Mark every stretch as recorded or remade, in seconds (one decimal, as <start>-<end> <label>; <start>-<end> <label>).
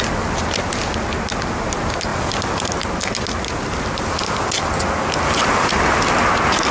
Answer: 0.0-6.7 recorded